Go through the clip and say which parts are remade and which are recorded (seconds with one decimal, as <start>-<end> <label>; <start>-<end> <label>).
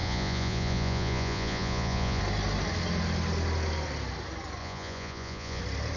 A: 0.0-2.2 remade; 2.2-4.6 recorded; 4.6-5.6 remade; 5.6-6.0 recorded